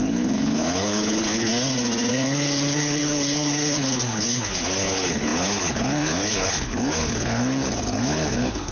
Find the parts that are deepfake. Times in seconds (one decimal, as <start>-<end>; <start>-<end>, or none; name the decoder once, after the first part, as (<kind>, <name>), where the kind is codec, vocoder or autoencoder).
0.0-1.5 (codec, HILCodec); 2.1-8.7

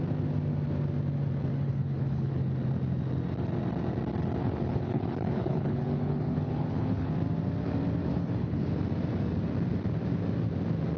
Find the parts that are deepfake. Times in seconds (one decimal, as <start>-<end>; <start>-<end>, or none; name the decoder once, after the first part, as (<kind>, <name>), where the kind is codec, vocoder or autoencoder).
1.5-2.3 (codec, HILCodec); 4.4-7.1; 8.1-8.7

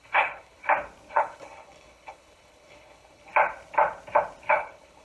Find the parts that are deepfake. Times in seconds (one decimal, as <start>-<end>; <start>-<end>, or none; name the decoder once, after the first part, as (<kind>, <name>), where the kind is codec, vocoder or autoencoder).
0.0-0.6 (codec, HILCodec); 1.1-3.3; 4.5-5.0

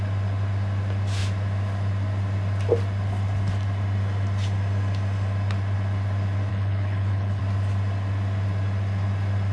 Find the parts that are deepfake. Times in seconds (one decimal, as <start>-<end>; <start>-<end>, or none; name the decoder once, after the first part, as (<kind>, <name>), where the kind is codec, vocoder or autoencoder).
6.5-7.4 (codec, HILCodec)

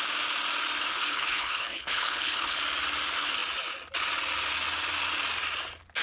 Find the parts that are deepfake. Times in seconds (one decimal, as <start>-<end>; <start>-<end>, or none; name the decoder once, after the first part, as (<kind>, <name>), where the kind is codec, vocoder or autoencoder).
0.9-2.6 (codec, HILCodec)

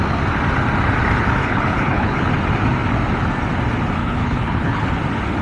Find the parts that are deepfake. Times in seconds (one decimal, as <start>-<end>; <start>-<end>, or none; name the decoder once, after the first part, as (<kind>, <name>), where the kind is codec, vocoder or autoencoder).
1.4-2.3 (codec, HILCodec); 4.0-4.9

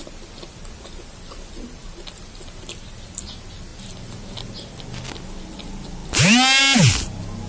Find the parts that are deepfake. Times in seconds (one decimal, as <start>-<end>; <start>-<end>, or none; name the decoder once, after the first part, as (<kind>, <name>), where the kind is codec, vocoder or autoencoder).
none

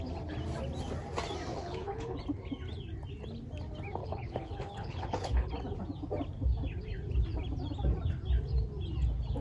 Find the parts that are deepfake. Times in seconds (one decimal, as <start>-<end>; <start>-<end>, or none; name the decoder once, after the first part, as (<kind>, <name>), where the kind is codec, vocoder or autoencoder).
1.5-2.2 (codec, HILCodec); 4.0-5.5